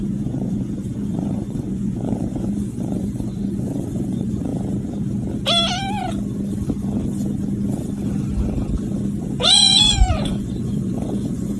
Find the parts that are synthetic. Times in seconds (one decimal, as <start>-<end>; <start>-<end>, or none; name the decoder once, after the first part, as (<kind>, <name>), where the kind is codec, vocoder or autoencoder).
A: 0.0-4.5 (vocoder, Vocos); 9.2-11.6